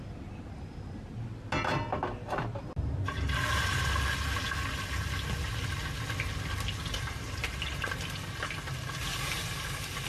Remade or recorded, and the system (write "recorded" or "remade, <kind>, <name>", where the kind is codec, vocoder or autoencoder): recorded